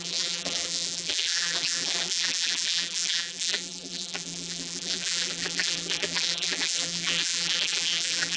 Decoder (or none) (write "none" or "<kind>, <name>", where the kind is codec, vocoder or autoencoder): vocoder, BigVGAN v2